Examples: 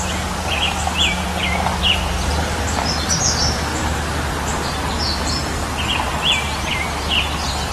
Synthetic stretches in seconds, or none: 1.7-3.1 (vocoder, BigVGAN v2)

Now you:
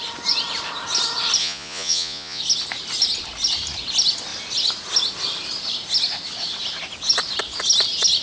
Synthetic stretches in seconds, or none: 1.4-2.4 (vocoder, Vocos)